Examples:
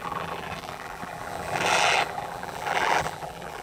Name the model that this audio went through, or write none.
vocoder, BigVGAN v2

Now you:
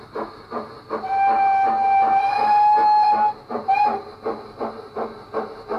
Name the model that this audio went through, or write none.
none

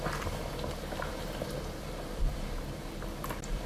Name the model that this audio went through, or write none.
vocoder, BigVGAN v2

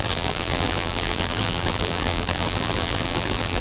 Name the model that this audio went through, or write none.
vocoder, BigVGAN v2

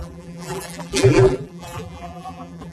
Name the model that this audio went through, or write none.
vocoder, BigVGAN v2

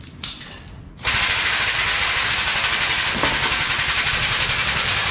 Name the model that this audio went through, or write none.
none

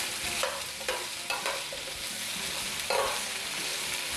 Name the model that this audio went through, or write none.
vocoder, BigVGAN v2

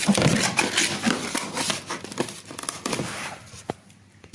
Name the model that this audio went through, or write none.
vocoder, BigVGAN v2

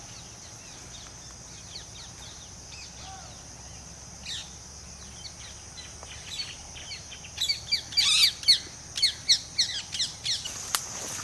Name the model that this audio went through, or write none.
none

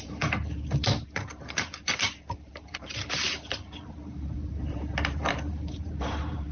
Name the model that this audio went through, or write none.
vocoder, BigVGAN v2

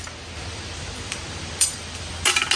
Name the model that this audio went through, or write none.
none